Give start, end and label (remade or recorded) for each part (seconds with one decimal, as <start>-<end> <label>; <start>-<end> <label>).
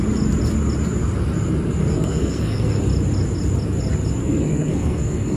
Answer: 0.0-1.8 recorded; 1.8-2.7 remade; 2.7-4.2 recorded; 4.2-5.4 remade